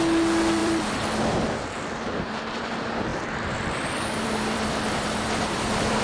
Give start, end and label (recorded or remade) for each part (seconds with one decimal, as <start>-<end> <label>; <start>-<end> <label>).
0.0-0.6 recorded; 0.6-2.7 remade; 2.7-3.1 recorded; 3.1-6.0 remade